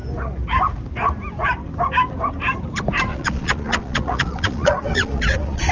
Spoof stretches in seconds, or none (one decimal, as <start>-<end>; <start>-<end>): 3.1-5.7